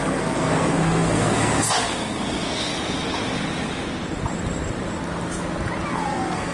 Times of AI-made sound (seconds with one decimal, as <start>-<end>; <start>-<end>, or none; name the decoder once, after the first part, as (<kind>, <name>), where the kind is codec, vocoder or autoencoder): 0.0-2.7 (codec, SNAC); 5.9-6.5